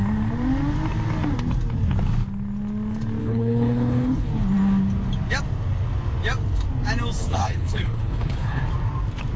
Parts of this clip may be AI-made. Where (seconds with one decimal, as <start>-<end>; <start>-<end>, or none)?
3.2-4.3; 7.2-8.6